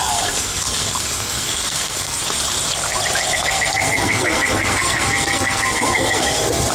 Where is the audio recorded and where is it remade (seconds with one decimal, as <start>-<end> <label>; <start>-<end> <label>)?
0.0-2.2 remade; 2.2-3.3 recorded; 3.3-6.7 remade